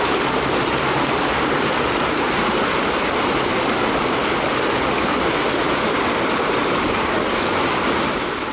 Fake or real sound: real